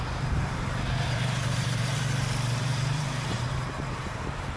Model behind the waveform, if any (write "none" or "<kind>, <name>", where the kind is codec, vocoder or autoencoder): vocoder, BigVGAN v2